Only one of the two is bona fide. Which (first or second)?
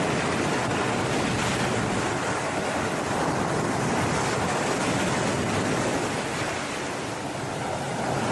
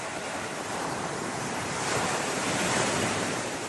first